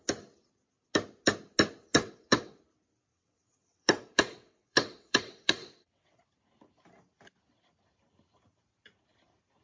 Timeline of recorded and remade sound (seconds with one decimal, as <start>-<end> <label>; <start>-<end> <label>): 0.0-1.9 recorded; 1.9-2.6 remade; 2.6-3.1 recorded; 3.1-6.2 remade; 6.2-9.6 recorded